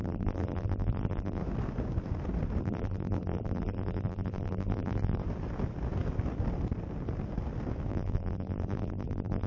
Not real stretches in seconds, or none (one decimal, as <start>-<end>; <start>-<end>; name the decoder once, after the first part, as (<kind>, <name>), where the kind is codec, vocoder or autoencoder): 0.0-1.4 (vocoder, BigVGAN v2); 2.6-5.2; 7.9-9.5